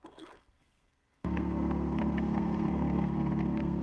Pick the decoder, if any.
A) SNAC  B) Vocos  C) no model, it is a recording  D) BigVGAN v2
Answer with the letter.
A